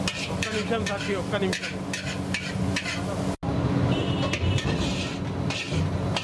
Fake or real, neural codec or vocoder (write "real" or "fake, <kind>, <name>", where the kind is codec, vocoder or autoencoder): real